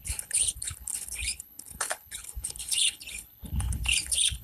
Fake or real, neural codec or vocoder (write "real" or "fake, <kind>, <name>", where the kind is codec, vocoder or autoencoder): fake, codec, HILCodec